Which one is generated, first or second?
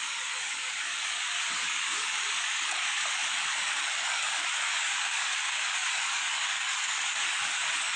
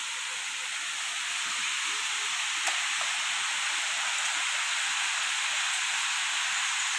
first